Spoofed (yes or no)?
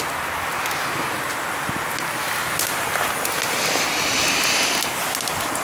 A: no